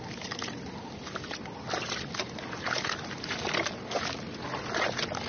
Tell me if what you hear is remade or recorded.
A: recorded